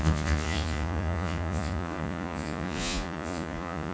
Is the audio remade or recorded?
remade